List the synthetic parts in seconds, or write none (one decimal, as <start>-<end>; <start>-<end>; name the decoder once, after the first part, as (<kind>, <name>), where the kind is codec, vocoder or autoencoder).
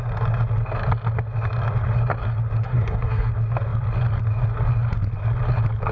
2.6-3.3 (codec, SNAC)